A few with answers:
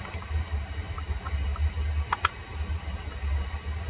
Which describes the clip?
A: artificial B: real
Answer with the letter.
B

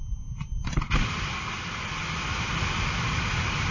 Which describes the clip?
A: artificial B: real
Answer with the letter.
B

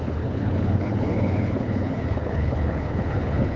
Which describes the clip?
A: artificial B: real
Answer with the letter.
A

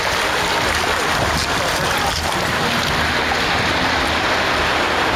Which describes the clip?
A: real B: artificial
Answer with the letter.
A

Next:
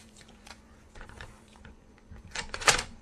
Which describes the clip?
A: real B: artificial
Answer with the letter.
B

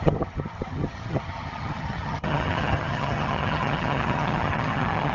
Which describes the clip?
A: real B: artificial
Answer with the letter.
B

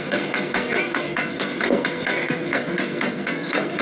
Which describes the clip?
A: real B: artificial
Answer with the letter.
B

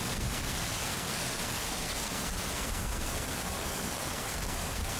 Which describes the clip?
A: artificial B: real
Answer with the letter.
A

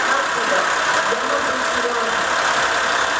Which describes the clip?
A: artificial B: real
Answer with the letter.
B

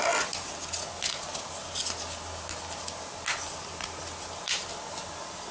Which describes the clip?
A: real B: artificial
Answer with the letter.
A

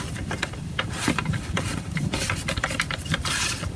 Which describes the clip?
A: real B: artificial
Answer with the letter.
B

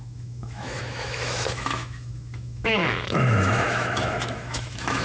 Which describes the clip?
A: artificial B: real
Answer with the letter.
A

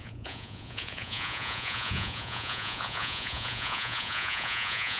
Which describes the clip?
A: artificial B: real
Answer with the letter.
A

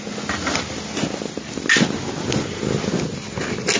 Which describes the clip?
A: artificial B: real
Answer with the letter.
B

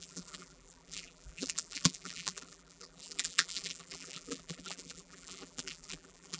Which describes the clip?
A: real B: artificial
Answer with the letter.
B